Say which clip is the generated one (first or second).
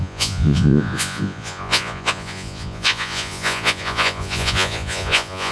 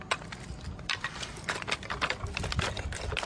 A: first